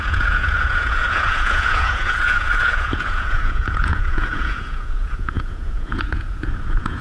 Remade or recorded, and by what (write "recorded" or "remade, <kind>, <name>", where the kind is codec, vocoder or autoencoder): remade, vocoder, Vocos